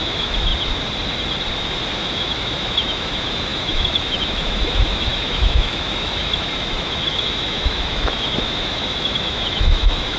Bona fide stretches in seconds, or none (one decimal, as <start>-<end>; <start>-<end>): 0.5-1.6